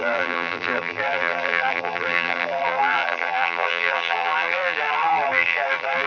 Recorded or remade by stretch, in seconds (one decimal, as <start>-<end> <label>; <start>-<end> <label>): 0.0-6.1 remade